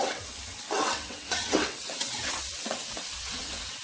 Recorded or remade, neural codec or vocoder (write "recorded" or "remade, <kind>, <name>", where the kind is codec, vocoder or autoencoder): remade, vocoder, WaveNeXt